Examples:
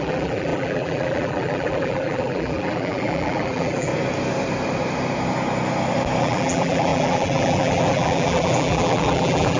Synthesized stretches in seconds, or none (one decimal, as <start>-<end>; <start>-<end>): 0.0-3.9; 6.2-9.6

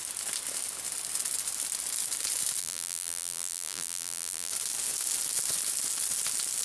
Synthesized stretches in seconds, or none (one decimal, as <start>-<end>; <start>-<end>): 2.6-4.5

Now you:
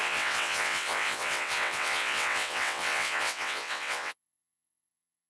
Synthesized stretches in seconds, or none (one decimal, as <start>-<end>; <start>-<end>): 0.0-5.3

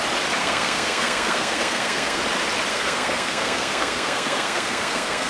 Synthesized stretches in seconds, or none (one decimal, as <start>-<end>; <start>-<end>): 0.4-2.2; 2.7-5.3

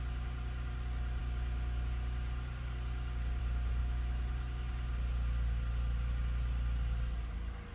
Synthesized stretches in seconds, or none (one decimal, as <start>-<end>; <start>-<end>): none